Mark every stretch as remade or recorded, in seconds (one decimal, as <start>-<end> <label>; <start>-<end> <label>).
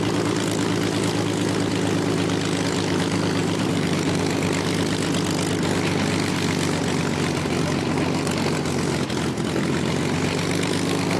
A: 0.0-3.4 recorded; 3.4-4.2 remade; 4.2-11.2 recorded